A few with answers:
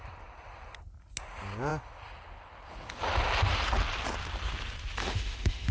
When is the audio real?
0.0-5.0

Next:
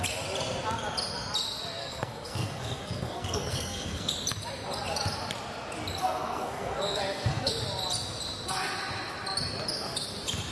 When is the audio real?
0.0-1.8; 4.1-6.0; 7.5-10.5